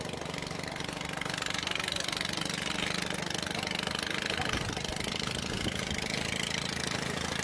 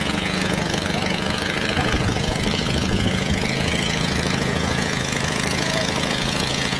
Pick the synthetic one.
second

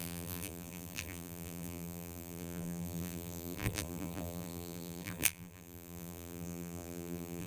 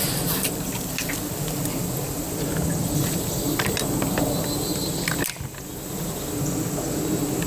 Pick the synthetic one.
first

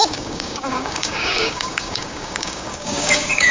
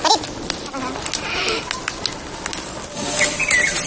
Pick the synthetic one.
first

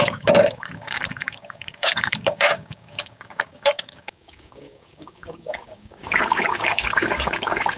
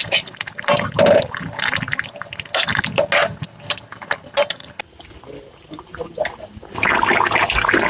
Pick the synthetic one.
first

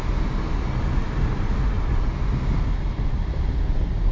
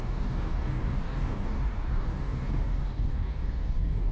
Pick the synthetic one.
second